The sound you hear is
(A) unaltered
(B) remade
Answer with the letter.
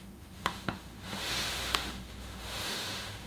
B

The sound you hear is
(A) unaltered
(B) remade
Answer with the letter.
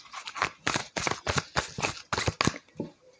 A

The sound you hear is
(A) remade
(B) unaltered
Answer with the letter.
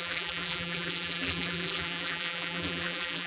A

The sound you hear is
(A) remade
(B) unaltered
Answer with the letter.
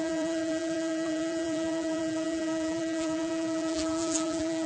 A